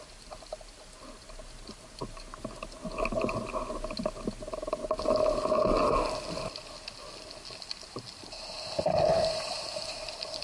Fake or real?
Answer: real